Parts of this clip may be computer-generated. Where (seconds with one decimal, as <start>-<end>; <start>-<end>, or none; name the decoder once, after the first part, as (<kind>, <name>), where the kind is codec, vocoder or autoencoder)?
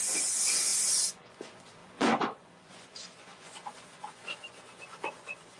0.0-5.6 (vocoder, Vocos)